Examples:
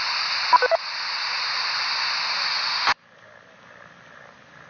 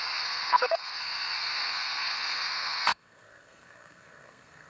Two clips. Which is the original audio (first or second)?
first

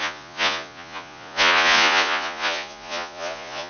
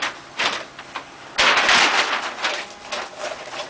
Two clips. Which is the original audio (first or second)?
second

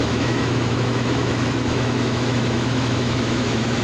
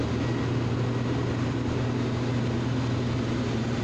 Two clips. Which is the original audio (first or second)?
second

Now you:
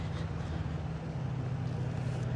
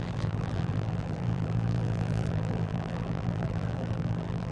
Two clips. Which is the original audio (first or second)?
first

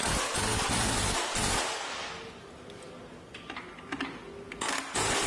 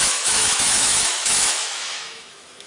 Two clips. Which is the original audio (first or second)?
first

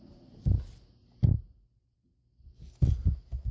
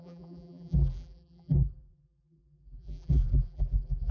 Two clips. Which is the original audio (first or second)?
first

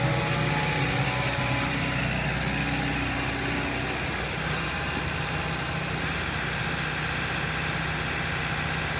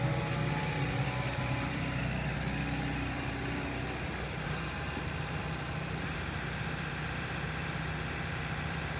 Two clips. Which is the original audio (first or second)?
first